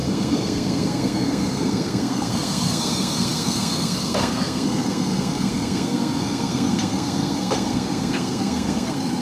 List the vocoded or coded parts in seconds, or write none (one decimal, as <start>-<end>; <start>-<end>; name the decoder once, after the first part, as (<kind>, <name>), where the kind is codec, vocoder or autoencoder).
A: 0.0-9.2 (codec, SNAC)